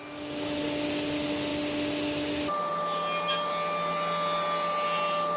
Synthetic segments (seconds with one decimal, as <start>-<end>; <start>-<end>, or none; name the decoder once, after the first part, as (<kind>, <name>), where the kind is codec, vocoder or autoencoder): none